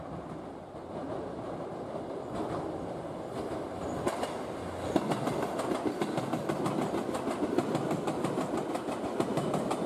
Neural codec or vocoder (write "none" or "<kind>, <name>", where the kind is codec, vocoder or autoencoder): none